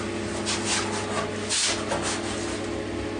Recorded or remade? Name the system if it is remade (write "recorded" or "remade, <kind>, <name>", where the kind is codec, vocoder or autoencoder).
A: recorded